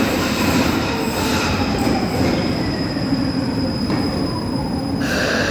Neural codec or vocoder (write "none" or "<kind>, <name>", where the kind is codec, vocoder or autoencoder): vocoder, BigVGAN v2